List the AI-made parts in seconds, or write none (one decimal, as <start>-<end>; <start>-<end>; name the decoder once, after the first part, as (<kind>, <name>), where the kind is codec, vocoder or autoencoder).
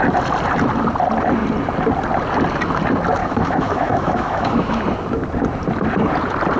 3.2-4.8 (autoencoder, DAC-VAE)